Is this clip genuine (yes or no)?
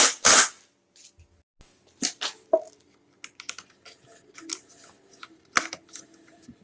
yes